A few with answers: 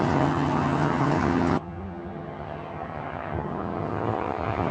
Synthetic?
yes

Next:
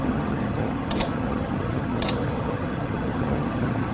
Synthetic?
yes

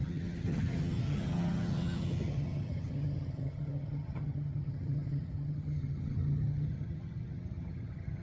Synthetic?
yes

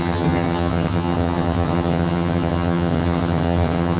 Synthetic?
yes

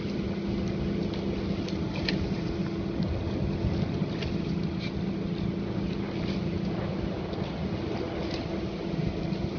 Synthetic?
no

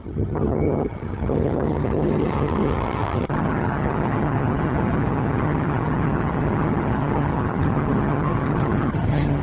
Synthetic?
yes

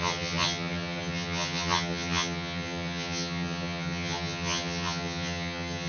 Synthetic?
yes